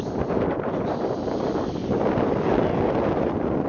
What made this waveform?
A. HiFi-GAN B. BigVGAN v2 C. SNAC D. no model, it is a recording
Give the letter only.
D